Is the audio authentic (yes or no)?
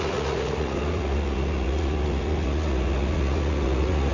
no